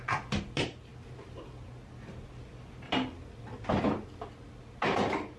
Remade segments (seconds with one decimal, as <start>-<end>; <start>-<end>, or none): none